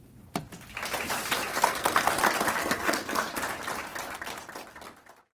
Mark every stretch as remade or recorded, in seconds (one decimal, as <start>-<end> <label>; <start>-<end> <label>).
0.0-1.5 recorded; 1.5-2.1 remade; 2.1-2.6 recorded; 2.6-3.3 remade; 3.3-5.3 recorded